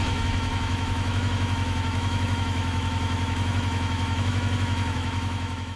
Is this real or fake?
fake